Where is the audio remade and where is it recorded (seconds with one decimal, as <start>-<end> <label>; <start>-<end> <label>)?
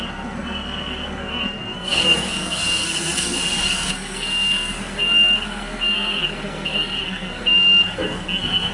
0.0-8.7 remade